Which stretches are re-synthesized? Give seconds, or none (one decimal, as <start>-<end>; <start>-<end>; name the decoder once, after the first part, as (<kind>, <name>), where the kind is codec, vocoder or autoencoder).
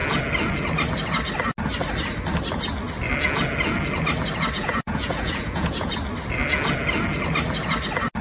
4.6-5.9 (vocoder, Vocos)